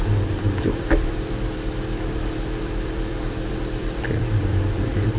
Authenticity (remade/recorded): remade